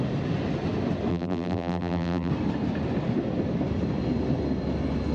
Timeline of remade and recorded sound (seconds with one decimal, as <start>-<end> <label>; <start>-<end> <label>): 0.0-1.1 recorded; 1.1-2.3 remade; 2.3-5.1 recorded